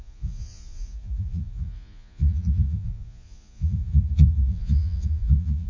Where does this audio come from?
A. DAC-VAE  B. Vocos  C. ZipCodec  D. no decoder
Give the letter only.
B